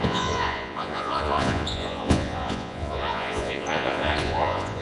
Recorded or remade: remade